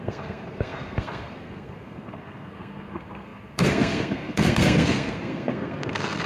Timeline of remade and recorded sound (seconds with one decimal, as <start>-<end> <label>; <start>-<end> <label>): 0.0-6.3 remade